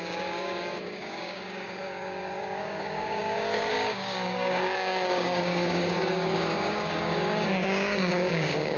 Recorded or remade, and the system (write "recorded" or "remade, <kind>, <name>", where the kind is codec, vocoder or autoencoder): remade, codec, DAC